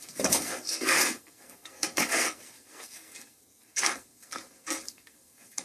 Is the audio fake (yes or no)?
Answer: yes